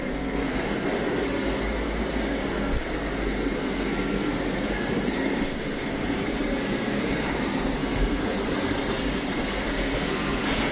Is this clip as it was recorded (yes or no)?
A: no